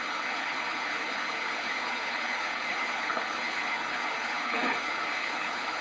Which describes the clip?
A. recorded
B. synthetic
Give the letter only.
B